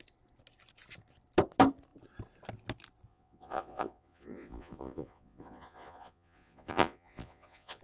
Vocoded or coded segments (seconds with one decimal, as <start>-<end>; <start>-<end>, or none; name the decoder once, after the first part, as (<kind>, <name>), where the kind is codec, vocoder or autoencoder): 3.1-7.8 (vocoder, Vocos)

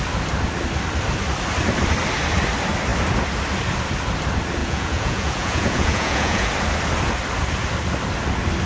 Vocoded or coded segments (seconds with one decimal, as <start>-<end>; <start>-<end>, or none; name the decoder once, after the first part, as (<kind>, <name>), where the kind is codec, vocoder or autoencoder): 4.6-6.5 (vocoder, Vocos)

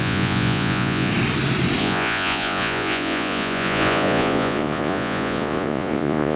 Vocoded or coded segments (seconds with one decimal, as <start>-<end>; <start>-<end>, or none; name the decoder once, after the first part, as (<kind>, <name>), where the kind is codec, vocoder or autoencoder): 0.0-1.1 (vocoder, Vocos); 1.8-6.4

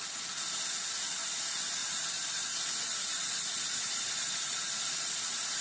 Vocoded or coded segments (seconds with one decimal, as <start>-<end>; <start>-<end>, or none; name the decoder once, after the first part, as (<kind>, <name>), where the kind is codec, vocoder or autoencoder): 1.8-5.1 (vocoder, Vocos)

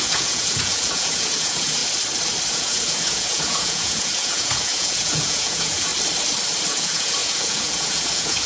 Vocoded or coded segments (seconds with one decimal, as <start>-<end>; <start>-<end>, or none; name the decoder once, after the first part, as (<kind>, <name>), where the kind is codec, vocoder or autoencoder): 0.0-1.8 (vocoder, Vocos); 2.5-5.9; 6.7-8.5